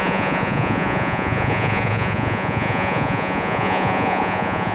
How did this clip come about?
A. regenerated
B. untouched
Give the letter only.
A